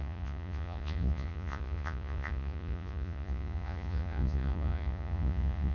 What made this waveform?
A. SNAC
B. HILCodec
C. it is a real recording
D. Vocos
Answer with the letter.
D